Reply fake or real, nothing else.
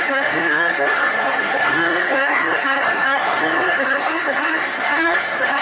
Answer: fake